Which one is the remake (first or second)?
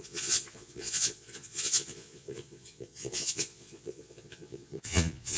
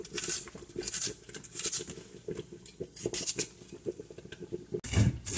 first